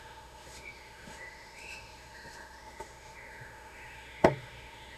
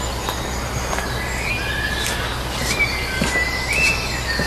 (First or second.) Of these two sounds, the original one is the second